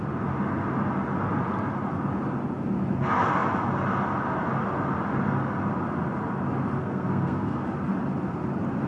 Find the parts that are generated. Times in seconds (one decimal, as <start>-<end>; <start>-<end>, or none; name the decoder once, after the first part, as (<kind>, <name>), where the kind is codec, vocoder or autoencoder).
6.8-7.6 (codec, SNAC)